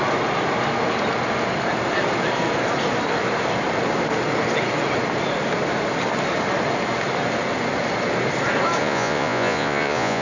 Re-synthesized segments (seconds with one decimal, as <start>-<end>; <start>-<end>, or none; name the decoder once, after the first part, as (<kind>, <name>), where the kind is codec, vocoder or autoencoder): 8.8-10.2 (vocoder, Vocos)